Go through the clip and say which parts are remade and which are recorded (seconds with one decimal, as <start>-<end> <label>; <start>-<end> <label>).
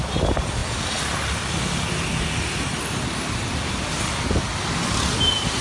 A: 0.0-5.6 recorded